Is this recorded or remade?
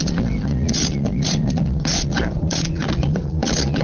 remade